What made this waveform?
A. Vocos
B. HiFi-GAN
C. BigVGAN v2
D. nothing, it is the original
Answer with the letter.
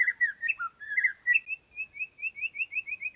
D